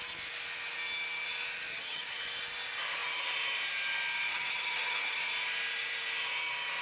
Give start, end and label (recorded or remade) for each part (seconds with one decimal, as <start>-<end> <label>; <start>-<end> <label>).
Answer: 0.0-1.7 recorded; 1.7-2.2 remade; 2.2-4.3 recorded; 4.3-5.2 remade; 5.2-6.8 recorded

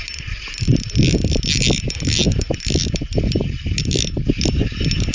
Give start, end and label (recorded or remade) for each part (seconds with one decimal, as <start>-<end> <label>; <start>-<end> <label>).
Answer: 0.0-5.1 recorded

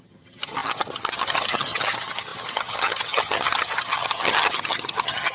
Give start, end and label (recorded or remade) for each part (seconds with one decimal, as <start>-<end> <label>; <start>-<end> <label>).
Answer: 0.0-5.3 remade

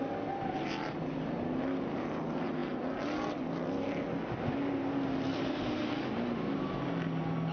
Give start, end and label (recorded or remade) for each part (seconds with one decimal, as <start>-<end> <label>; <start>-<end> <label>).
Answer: 0.0-7.5 recorded